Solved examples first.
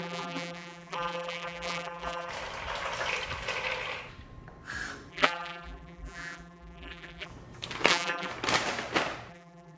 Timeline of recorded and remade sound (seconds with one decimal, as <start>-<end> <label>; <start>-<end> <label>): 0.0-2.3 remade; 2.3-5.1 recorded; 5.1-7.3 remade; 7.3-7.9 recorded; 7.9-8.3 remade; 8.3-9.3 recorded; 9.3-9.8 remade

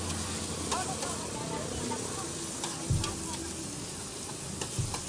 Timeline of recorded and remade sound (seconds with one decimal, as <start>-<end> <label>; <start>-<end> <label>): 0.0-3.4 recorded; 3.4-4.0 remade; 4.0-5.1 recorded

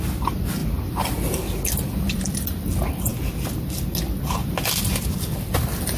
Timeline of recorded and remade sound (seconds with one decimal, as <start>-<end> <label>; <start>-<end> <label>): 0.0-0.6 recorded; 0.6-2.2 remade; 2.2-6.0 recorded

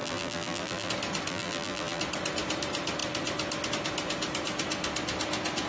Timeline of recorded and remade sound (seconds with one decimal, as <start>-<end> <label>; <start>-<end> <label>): 0.0-0.9 remade; 0.9-1.3 recorded; 1.3-2.0 remade; 2.0-5.7 recorded

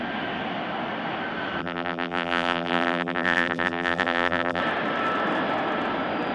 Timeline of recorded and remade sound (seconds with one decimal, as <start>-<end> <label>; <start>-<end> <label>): 0.0-1.6 recorded; 1.6-4.6 remade; 4.6-6.3 recorded

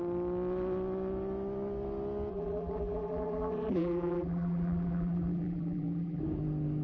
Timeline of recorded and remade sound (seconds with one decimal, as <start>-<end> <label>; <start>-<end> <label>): 0.0-2.3 recorded; 2.3-6.2 remade; 6.2-6.8 recorded